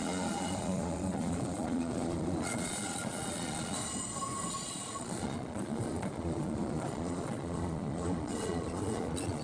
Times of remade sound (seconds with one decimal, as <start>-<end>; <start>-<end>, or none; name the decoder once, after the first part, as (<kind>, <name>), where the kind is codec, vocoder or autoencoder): 0.0-3.8 (vocoder, Vocos); 4.5-9.4